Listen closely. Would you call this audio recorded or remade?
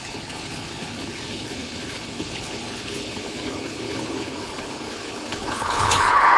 remade